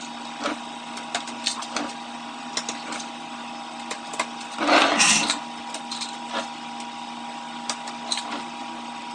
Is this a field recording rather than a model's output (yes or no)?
yes